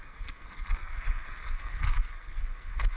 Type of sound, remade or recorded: remade